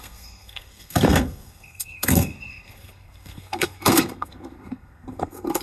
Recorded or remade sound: remade